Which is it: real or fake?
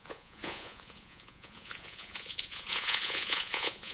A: fake